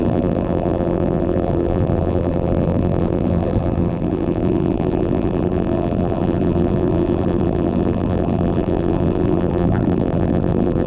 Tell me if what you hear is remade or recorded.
remade